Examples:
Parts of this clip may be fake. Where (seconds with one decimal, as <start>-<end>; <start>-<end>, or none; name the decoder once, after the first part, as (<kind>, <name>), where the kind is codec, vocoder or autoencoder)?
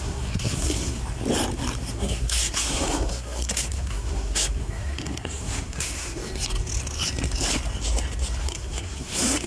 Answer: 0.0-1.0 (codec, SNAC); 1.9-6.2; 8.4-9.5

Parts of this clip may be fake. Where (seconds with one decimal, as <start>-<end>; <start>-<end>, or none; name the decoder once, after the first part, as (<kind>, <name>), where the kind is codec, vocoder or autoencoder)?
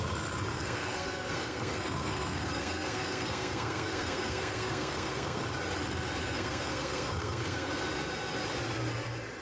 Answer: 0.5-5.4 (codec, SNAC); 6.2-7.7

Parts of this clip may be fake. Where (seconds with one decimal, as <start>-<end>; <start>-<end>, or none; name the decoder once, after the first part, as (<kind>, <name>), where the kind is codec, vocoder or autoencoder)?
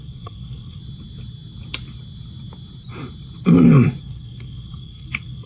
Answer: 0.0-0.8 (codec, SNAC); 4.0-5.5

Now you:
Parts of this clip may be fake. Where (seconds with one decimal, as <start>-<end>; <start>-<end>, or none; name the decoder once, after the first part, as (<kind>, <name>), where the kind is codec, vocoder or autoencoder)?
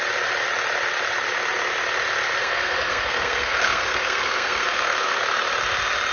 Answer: 2.4-5.2 (codec, SNAC)